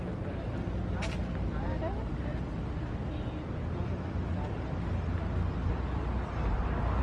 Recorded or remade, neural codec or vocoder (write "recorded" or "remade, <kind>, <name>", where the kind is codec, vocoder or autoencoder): recorded